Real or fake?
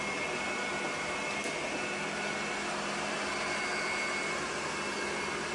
real